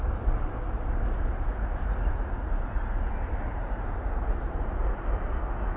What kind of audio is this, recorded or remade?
recorded